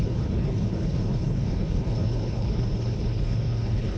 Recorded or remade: remade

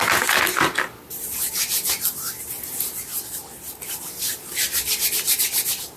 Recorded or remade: recorded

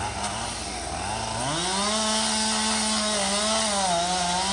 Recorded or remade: recorded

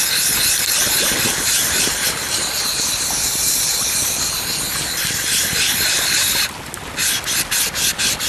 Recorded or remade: recorded